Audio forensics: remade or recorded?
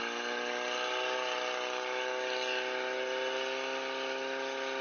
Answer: recorded